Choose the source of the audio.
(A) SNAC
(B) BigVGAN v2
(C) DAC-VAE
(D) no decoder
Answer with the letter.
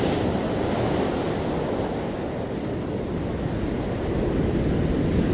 D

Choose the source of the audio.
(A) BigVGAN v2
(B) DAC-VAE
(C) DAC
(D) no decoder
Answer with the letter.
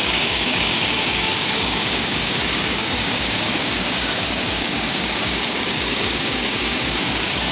C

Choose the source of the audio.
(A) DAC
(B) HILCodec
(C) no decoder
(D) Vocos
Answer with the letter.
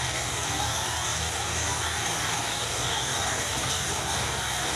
A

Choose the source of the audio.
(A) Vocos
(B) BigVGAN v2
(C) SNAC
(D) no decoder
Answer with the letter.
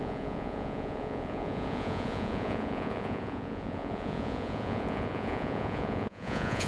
A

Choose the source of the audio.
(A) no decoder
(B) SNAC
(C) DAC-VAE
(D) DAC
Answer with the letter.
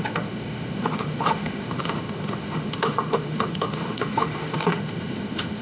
C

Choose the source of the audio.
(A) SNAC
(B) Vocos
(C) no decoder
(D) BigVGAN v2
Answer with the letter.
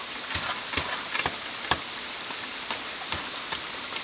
C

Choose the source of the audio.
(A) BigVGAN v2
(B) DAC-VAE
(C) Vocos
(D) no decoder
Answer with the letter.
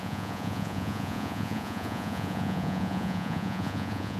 C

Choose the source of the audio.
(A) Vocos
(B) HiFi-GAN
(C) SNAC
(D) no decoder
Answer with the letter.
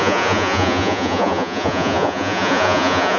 A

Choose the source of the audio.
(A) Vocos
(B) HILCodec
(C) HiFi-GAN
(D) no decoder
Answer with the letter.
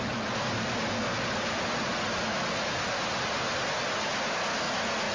D